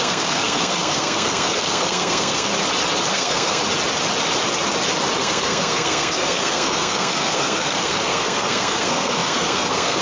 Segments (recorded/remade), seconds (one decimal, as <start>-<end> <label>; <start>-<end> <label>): 0.0-2.5 remade; 2.5-3.1 recorded; 3.1-3.6 remade; 3.6-5.2 recorded; 5.2-10.0 remade